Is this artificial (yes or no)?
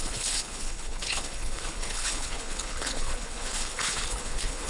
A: yes